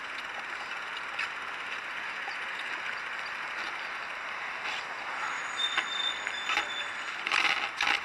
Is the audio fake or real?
real